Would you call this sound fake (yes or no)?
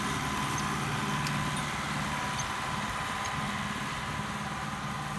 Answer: no